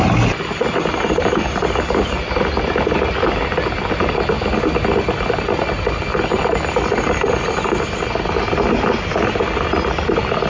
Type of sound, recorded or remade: recorded